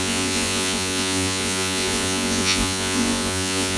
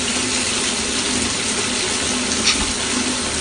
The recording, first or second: second